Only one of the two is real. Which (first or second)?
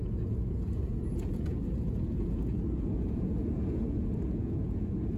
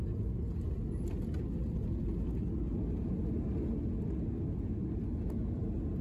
second